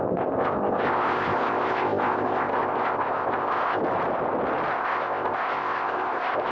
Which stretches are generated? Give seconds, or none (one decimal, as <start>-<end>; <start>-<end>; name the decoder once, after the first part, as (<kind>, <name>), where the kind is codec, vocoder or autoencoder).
0.0-3.8 (codec, ZipCodec); 4.7-6.5